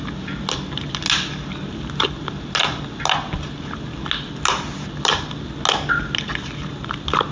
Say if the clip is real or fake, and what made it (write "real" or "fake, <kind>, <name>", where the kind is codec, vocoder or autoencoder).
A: real